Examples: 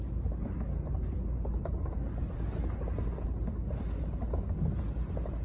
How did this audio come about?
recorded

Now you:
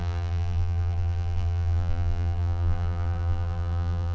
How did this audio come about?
remade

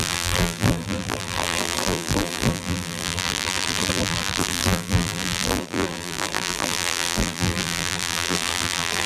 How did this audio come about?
remade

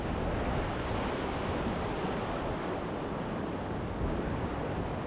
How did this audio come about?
recorded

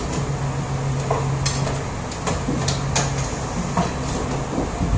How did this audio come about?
recorded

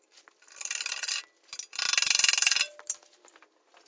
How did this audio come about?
recorded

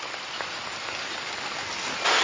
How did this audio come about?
recorded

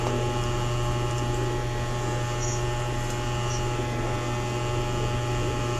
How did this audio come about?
recorded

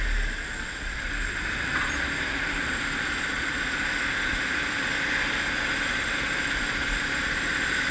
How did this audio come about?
remade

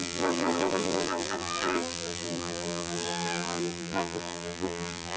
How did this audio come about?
remade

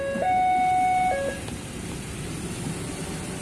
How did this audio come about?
recorded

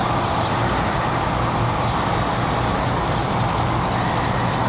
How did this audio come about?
recorded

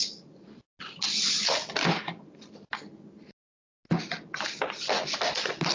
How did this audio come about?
recorded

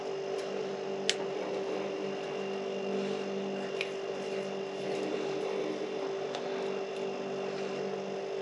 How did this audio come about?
recorded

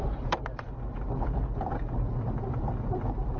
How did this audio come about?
remade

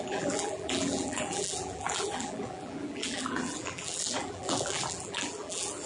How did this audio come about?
remade